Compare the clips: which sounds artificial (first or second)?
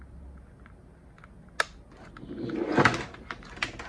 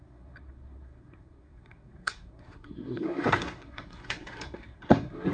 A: second